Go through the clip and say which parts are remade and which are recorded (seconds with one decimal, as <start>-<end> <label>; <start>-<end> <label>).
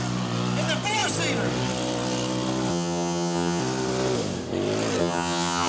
0.0-2.7 recorded; 2.7-3.6 remade; 3.6-5.0 recorded; 5.0-5.7 remade